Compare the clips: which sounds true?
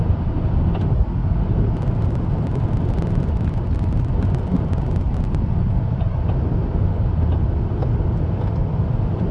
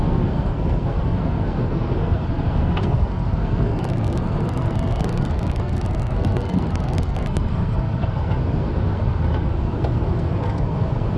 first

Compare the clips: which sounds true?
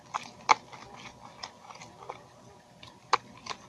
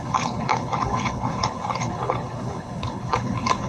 first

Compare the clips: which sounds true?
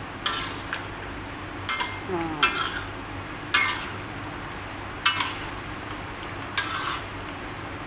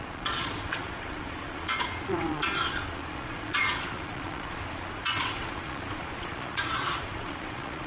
first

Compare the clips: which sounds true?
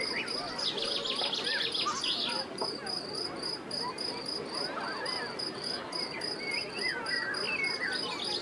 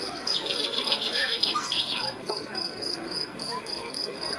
first